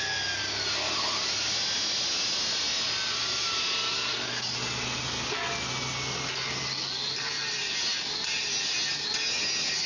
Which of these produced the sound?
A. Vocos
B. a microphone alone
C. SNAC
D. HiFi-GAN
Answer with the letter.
B